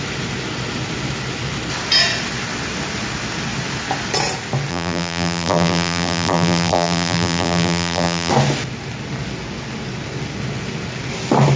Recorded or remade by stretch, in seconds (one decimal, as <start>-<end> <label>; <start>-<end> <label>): 0.0-4.7 recorded; 4.7-8.3 remade; 8.3-11.6 recorded